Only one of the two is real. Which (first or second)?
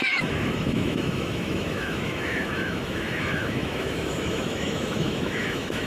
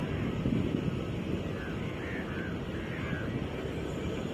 second